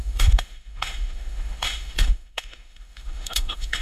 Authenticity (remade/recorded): remade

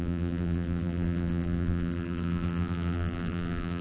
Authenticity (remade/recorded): remade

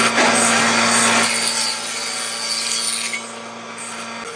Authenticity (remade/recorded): recorded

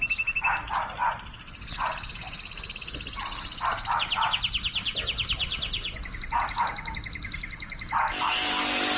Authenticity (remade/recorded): recorded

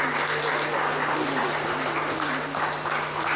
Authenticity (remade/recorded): recorded